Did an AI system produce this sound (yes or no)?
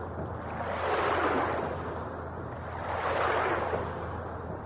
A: no